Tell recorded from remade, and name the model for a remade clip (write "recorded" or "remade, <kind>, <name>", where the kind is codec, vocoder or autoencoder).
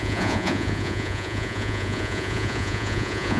remade, vocoder, Vocos